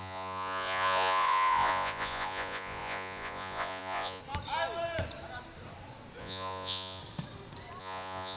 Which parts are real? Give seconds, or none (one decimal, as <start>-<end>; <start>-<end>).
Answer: 4.2-6.2; 7.0-7.8